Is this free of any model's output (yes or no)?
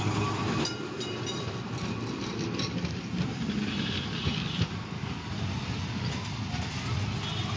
yes